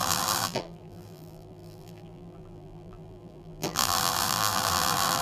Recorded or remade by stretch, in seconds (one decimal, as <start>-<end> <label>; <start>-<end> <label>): 0.0-5.2 remade